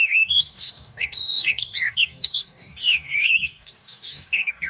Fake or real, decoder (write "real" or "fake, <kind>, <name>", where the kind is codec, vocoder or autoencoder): fake, codec, DAC